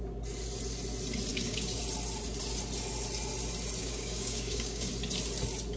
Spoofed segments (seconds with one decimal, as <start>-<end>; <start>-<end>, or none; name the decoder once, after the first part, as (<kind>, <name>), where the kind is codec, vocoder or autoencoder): 1.3-1.8 (codec, DAC); 3.8-4.9